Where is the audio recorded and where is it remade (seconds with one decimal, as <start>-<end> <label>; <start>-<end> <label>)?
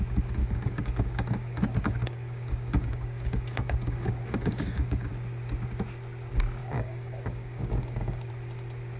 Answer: 0.0-0.4 recorded; 0.4-5.1 remade; 5.1-6.6 recorded; 6.6-8.3 remade; 8.3-9.0 recorded